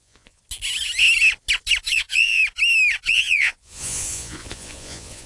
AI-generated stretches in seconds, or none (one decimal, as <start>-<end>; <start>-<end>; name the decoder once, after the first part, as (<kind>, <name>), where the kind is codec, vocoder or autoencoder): 0.0-0.4 (vocoder, Vocos); 1.9-2.4; 3.0-5.3